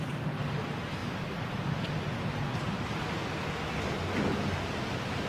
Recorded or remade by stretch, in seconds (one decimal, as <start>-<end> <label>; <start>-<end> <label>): 0.0-3.2 remade; 3.2-4.5 recorded; 4.5-5.3 remade